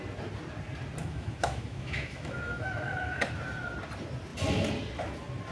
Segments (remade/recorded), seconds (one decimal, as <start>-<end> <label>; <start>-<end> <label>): 0.0-1.0 recorded; 1.0-3.2 remade; 3.2-5.5 recorded

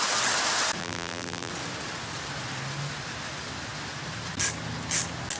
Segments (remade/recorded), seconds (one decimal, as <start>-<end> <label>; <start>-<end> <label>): 0.0-0.8 recorded; 0.8-1.5 remade; 1.5-5.4 recorded

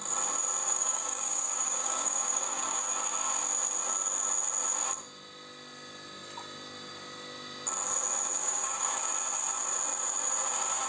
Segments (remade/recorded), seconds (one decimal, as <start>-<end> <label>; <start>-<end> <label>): 0.0-0.6 recorded; 0.6-2.8 remade; 2.8-8.4 recorded; 8.4-9.0 remade; 9.0-10.9 recorded